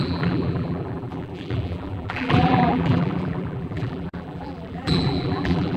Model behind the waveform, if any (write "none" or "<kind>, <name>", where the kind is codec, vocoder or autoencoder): vocoder, BigVGAN v2